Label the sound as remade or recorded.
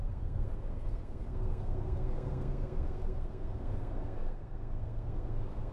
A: remade